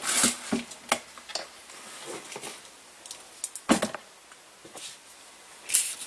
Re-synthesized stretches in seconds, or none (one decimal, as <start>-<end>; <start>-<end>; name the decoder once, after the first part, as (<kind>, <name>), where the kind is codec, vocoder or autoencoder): none